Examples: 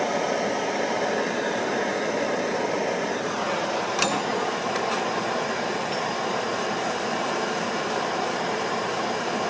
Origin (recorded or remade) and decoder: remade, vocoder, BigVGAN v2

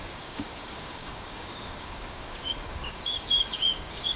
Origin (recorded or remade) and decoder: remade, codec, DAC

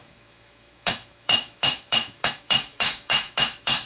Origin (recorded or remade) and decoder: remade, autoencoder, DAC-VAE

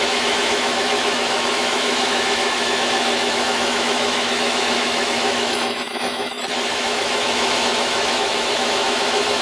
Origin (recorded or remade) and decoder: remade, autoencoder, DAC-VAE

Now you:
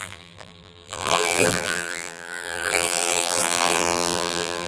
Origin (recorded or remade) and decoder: remade, vocoder, BigVGAN v2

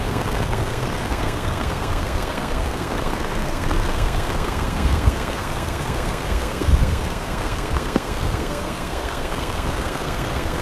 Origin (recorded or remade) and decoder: remade, codec, SNAC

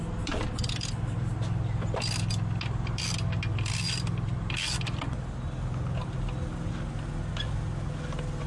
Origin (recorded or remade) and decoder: recorded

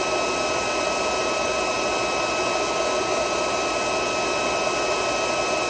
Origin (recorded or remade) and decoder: recorded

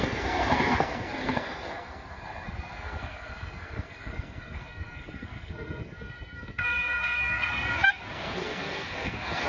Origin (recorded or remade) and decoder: remade, codec, SNAC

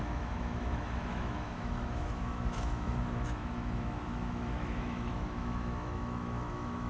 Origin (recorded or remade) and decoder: remade, autoencoder, DAC-VAE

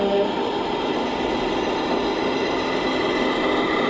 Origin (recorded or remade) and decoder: recorded